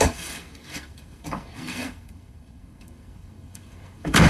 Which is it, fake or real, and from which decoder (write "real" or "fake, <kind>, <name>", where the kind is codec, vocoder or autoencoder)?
fake, codec, SNAC